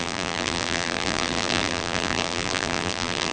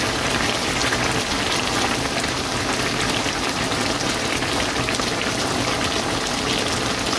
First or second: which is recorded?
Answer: second